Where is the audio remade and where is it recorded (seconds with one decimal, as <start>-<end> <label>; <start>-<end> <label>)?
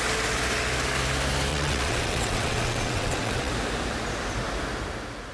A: 0.0-1.5 recorded; 1.5-3.5 remade; 3.5-5.3 recorded